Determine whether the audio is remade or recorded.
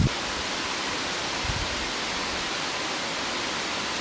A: recorded